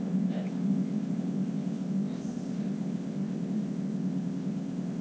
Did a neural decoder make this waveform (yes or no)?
yes